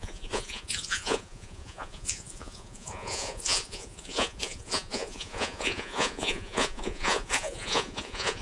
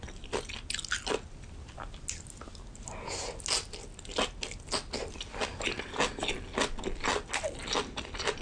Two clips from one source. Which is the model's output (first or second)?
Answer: first